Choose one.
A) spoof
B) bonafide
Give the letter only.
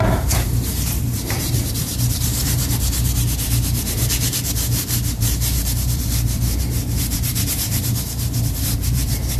A